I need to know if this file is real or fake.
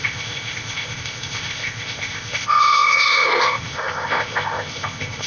fake